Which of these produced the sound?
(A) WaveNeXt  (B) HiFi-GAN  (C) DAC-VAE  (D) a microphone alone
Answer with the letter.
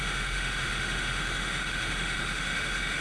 C